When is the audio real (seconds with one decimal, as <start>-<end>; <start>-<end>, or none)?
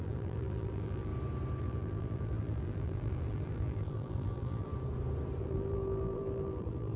1.1-1.6; 4.7-5.4